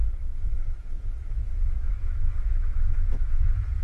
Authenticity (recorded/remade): remade